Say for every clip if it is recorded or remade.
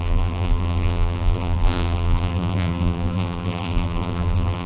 remade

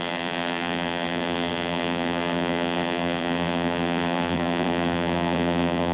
remade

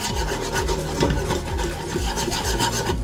recorded